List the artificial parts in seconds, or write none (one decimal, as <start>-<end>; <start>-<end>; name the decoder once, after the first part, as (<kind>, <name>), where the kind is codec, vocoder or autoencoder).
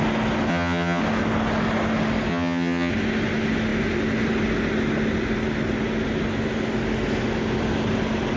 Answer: 0.5-1.0 (vocoder, HiFi-GAN); 2.3-2.9